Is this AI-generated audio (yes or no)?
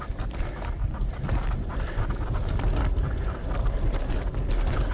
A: no